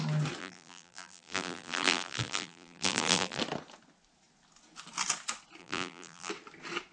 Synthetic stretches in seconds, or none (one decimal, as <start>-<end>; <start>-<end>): 0.4-3.4; 5.6-6.3